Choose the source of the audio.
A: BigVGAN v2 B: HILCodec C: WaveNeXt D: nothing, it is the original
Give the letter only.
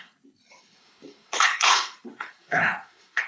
B